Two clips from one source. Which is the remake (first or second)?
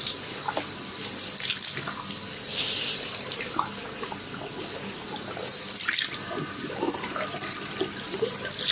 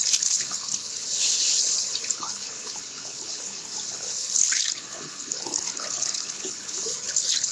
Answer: second